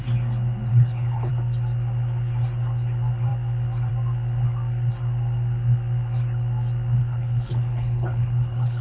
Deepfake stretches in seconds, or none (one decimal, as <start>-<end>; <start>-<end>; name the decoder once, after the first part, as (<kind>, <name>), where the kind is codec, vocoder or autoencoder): 0.7-1.3 (codec, HILCodec); 7.0-8.8

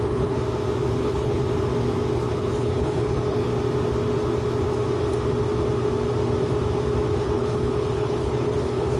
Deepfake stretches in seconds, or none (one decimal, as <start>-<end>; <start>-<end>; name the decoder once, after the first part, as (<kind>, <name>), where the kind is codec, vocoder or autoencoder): 0.0-0.4 (codec, HILCodec); 1.0-1.4; 2.3-3.5; 7.2-9.0

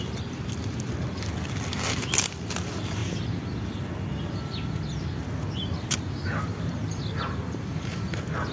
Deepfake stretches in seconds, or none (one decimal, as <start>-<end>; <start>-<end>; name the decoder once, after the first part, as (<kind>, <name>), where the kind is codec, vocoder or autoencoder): none

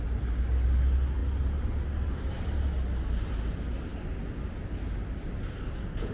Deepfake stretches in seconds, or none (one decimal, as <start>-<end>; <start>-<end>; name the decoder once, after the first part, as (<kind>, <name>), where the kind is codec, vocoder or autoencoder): none

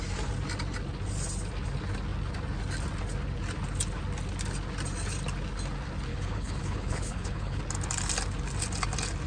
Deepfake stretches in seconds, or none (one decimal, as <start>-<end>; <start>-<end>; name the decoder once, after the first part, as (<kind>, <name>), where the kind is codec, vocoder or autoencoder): 6.1-7.6 (codec, HILCodec)

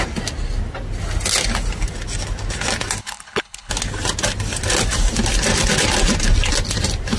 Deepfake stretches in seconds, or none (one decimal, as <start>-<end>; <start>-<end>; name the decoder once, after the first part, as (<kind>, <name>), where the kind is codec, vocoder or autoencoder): 3.0-3.7 (codec, HILCodec)